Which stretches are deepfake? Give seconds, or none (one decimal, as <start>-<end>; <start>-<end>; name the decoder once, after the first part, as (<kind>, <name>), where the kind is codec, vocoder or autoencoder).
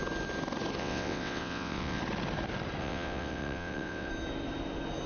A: 0.8-2.0 (vocoder, WaveNeXt); 2.8-4.1